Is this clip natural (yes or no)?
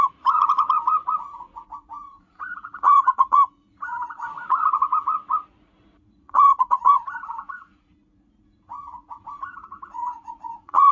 no